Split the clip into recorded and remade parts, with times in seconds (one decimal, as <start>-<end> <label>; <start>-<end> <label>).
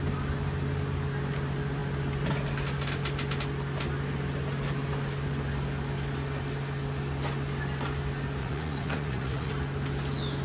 0.0-8.4 recorded; 8.4-9.5 remade; 9.5-10.4 recorded